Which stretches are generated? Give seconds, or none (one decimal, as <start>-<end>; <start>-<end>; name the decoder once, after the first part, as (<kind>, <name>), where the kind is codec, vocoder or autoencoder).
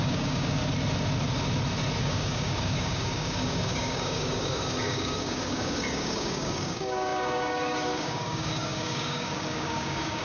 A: 0.0-0.6 (codec, DAC); 2.0-10.2